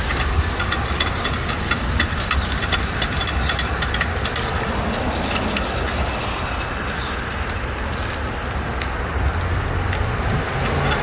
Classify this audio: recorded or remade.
recorded